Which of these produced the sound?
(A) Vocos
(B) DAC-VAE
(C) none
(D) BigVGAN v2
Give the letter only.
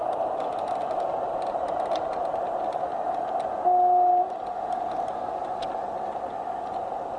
C